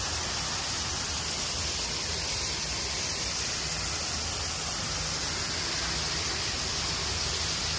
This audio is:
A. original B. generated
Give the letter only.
A